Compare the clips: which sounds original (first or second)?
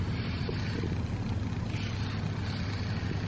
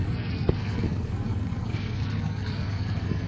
first